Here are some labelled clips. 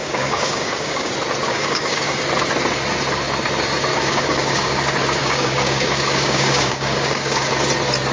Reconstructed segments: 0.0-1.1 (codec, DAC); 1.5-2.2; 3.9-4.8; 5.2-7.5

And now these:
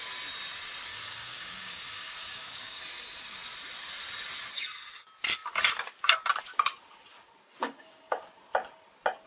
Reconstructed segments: 0.9-2.8 (codec, DAC); 7.6-8.2

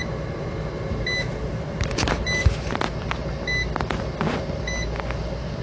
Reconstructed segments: none